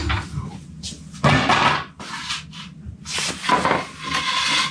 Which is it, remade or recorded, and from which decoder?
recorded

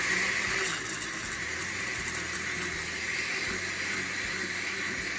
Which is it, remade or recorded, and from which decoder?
recorded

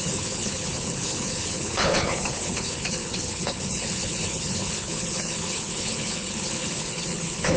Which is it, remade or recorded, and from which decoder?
remade, codec, HILCodec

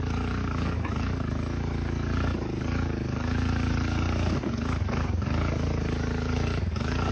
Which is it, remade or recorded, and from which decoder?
remade, codec, DAC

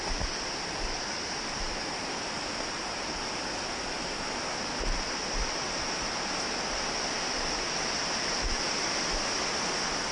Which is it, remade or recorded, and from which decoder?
recorded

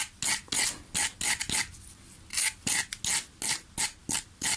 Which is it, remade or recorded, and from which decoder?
recorded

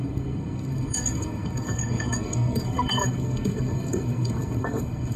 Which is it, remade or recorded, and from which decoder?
remade, codec, SNAC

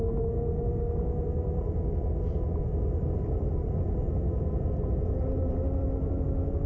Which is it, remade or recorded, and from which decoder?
recorded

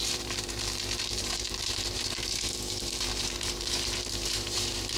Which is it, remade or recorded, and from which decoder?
remade, vocoder, BigVGAN v2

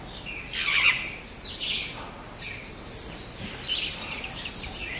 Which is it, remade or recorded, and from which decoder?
recorded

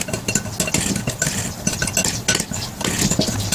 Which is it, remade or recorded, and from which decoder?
recorded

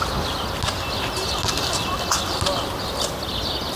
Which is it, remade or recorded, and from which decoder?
recorded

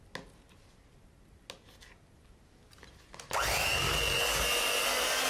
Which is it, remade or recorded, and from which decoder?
recorded